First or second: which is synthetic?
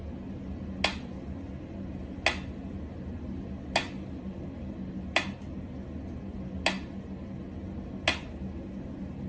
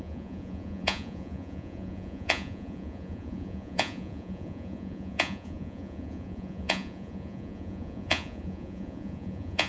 second